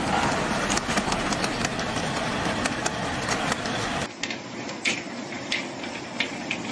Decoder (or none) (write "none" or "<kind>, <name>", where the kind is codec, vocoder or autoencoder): none